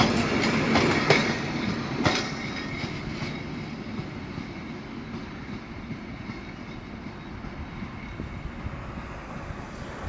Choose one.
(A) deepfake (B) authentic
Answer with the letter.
B